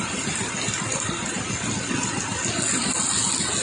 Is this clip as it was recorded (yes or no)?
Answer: yes